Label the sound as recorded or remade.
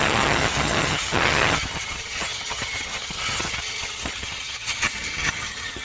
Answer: remade